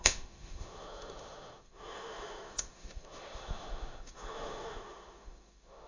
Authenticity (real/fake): fake